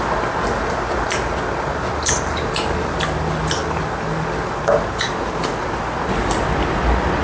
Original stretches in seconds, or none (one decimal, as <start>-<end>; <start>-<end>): 0.0-7.2